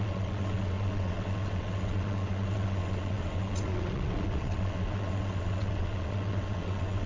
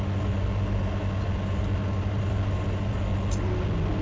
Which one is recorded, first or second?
second